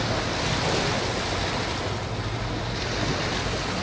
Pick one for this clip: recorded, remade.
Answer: recorded